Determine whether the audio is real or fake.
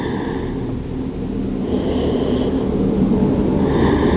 real